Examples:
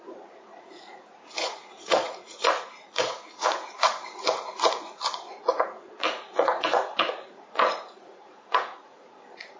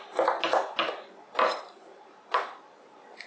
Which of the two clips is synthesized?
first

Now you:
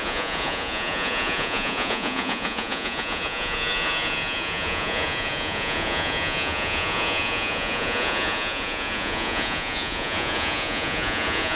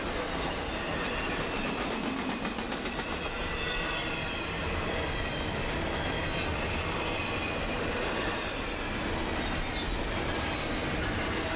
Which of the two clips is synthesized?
first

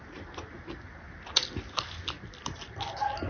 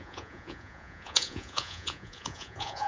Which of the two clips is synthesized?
second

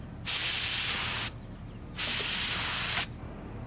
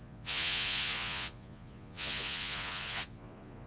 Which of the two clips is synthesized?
second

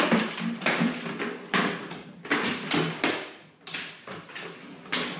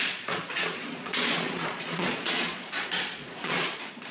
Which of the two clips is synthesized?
second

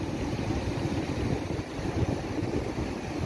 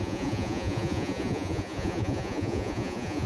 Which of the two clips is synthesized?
second